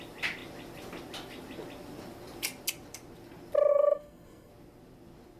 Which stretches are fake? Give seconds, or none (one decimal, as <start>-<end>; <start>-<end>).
3.7-4.5

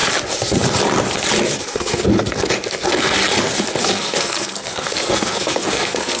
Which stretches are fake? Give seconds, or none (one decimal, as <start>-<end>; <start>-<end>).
1.6-2.1; 2.7-3.2; 3.8-6.2

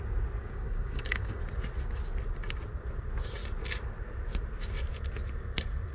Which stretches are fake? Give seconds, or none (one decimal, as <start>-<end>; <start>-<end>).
0.4-1.4

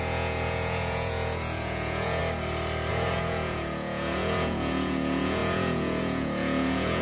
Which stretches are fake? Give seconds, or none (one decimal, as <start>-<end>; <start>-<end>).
0.0-2.2; 2.9-7.0

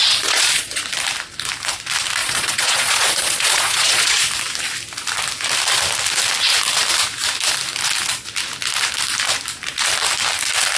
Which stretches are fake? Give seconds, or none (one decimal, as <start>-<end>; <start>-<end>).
0.0-0.8; 2.2-4.2

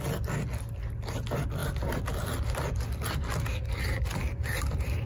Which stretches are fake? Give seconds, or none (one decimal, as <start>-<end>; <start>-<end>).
none